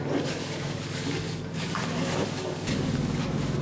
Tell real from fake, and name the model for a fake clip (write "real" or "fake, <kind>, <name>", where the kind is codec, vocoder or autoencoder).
fake, codec, DAC